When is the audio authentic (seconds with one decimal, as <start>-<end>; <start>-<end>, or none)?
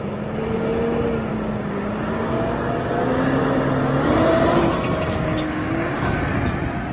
0.0-1.3; 2.4-5.1; 6.2-6.9